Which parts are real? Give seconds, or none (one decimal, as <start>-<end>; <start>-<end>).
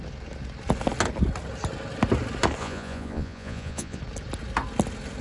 0.0-2.6; 4.0-5.2